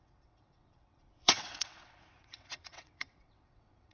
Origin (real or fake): fake